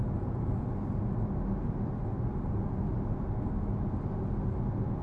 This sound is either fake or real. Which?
real